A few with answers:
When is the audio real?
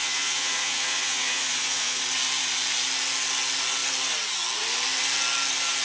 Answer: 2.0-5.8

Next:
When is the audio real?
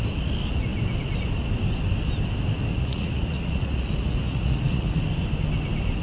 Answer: 0.0-2.7; 5.0-6.0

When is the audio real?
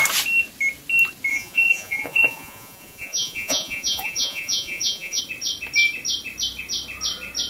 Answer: 0.0-1.3; 5.2-7.5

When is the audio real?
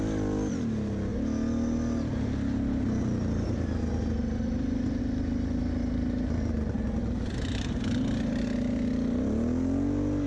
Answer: 0.0-10.3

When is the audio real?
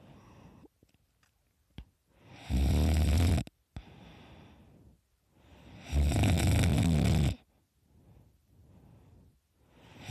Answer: 0.0-10.1